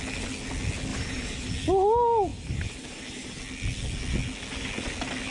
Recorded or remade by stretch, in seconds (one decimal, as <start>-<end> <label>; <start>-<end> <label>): 0.0-0.9 recorded; 0.9-1.5 remade; 1.5-2.3 recorded; 2.3-3.4 remade; 3.4-5.3 recorded